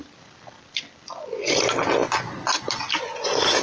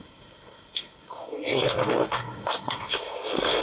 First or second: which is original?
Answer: first